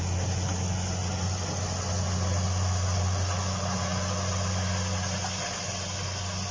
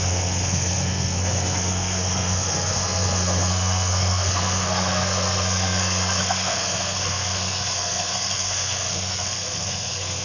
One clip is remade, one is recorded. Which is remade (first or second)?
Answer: second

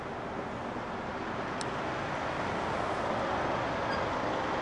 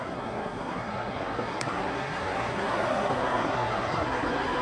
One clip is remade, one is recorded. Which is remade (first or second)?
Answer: second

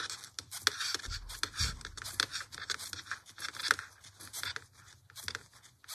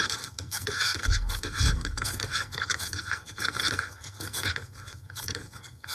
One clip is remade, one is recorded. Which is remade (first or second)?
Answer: second